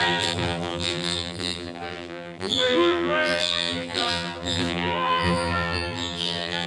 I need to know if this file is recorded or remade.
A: remade